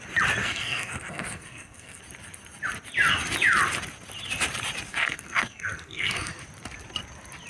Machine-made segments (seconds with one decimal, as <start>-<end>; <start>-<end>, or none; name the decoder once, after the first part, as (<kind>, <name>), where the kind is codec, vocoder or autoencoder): 0.4-2.0 (codec, SNAC); 4.9-6.4